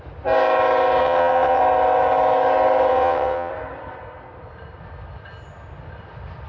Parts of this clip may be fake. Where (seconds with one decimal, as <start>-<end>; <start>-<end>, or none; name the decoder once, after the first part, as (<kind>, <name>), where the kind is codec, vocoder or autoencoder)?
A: 1.0-1.6 (vocoder, WaveNeXt); 2.9-3.5